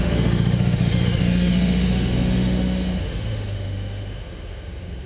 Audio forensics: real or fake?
fake